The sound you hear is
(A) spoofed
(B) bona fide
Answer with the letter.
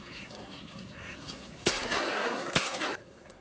A